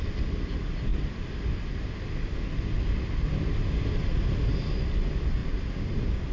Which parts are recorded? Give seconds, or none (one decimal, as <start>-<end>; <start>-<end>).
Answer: 0.0-6.3